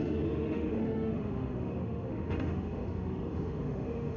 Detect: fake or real fake